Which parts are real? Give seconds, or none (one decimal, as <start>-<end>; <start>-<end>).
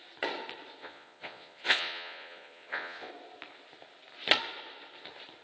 0.0-0.8; 3.1-5.4